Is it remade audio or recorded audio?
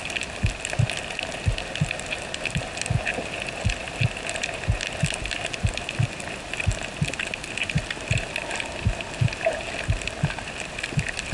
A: recorded